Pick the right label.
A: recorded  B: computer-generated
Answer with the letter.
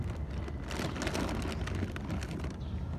A